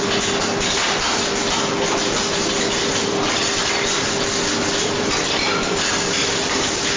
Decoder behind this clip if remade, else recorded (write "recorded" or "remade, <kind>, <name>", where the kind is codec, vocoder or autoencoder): recorded